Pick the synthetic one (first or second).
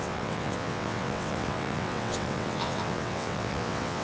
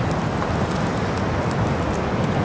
first